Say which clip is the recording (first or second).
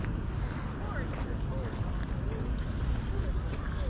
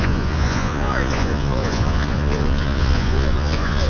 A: first